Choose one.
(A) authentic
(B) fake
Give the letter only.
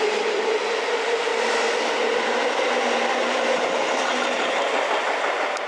A